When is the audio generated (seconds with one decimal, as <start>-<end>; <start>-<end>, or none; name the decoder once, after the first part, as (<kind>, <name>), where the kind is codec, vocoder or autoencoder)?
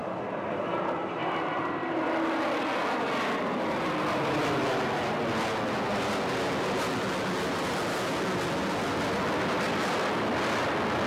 0.0-2.0 (vocoder, BigVGAN v2)